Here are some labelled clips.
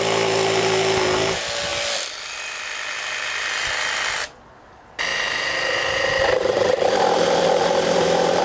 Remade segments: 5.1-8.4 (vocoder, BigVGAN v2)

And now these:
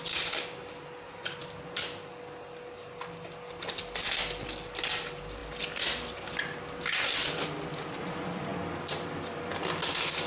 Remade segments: none

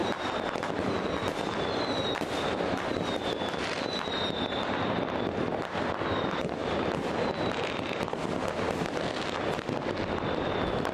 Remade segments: 1.9-2.9 (vocoder, BigVGAN v2); 3.5-6.6

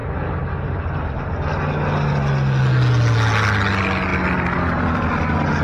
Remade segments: none

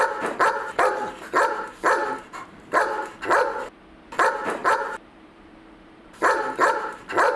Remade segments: 2.0-2.8 (vocoder, BigVGAN v2); 4.6-7.0

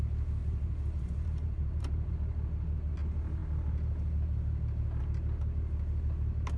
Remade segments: 0.4-2.1 (vocoder, BigVGAN v2)